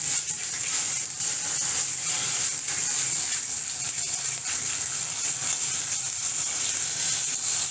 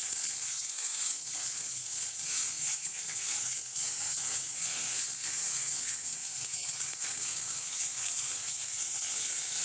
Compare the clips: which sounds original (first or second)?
first